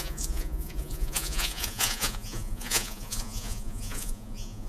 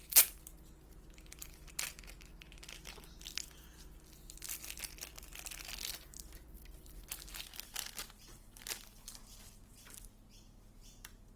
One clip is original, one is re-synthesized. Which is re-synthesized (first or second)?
first